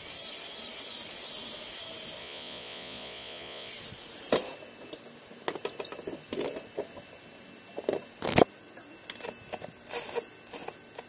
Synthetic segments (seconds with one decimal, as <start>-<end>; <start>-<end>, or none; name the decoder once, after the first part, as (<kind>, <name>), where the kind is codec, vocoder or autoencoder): 2.2-3.7 (vocoder, Vocos)